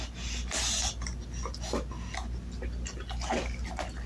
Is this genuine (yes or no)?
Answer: yes